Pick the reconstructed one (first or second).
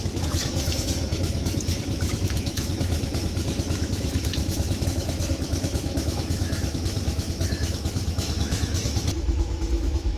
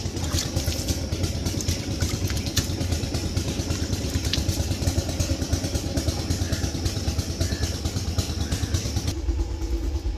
first